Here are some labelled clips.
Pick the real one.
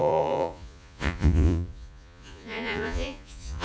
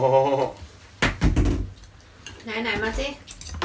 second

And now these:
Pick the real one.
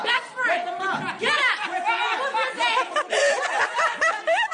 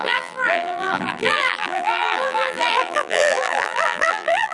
first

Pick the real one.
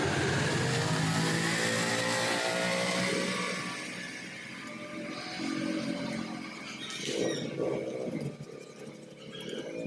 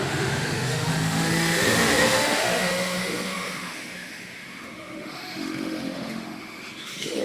first